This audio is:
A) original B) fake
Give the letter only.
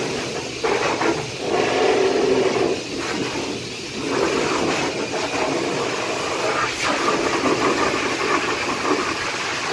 A